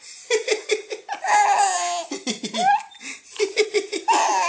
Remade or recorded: recorded